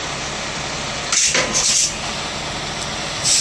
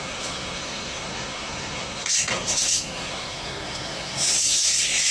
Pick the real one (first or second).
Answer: first